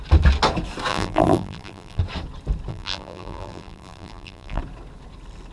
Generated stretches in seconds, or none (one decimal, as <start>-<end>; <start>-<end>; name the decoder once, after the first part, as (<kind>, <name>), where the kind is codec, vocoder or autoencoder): 0.9-2.0 (vocoder, BigVGAN v2); 2.7-4.6